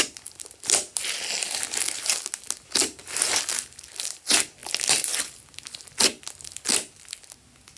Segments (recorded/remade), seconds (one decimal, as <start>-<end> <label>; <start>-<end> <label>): 0.0-7.8 recorded